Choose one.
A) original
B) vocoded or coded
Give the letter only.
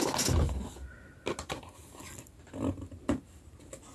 A